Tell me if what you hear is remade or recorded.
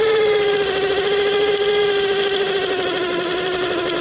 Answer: recorded